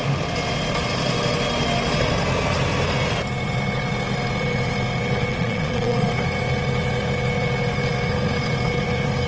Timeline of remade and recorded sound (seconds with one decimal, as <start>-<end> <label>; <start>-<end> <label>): 0.0-5.3 recorded; 5.3-6.1 remade; 6.1-9.3 recorded